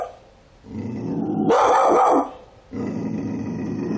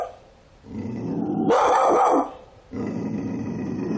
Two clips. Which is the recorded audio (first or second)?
first